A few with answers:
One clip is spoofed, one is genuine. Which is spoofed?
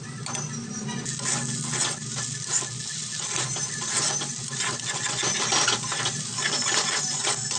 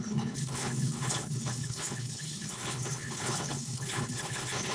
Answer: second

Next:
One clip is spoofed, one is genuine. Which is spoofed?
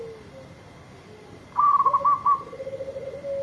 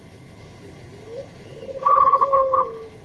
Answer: second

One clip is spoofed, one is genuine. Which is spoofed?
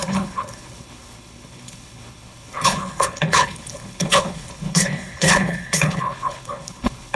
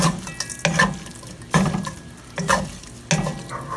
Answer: first